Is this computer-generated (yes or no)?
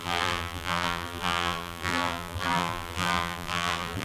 yes